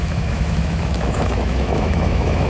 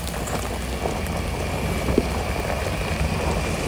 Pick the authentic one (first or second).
second